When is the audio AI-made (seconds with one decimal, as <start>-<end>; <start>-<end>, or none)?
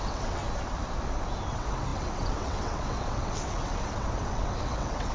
0.0-0.4; 1.5-5.1